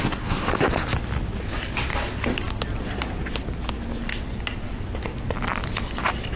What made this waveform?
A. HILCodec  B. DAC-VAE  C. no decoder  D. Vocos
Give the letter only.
C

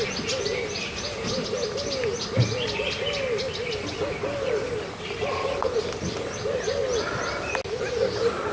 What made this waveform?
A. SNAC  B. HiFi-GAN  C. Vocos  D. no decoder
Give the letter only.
D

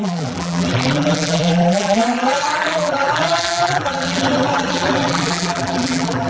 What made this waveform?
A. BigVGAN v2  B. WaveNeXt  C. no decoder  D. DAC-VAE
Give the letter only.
A